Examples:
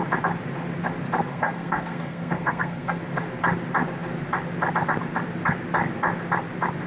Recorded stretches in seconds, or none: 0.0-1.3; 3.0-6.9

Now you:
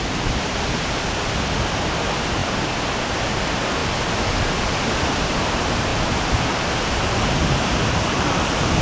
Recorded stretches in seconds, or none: 0.0-8.8

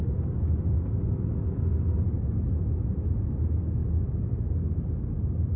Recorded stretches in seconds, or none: 0.0-5.6

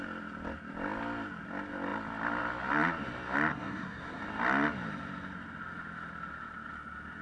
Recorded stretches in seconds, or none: 0.0-3.5; 4.2-7.2

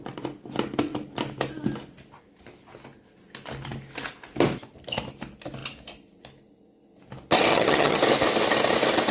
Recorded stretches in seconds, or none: 0.0-7.5; 8.0-9.1